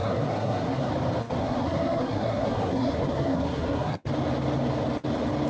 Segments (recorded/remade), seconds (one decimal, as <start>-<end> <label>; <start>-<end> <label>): 0.0-0.9 remade; 0.9-1.4 recorded; 1.4-4.1 remade; 4.1-5.5 recorded